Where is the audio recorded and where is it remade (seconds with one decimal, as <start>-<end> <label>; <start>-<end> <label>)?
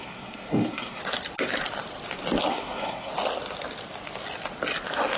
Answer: 0.0-1.0 remade; 1.0-2.5 recorded; 2.5-3.1 remade; 3.1-5.2 recorded